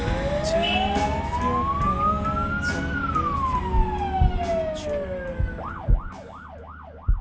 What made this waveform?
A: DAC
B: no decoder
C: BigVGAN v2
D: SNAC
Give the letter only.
B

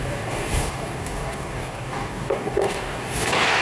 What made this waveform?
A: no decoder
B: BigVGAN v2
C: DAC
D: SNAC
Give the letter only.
C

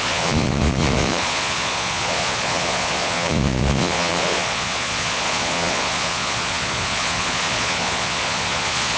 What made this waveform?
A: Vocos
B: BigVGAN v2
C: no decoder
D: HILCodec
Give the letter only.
A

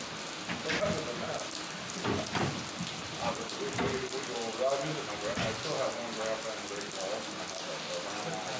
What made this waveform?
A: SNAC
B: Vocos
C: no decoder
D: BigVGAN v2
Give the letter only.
C